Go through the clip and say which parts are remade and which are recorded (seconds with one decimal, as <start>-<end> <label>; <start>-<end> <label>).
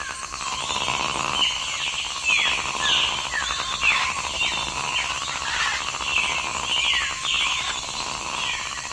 0.0-8.9 recorded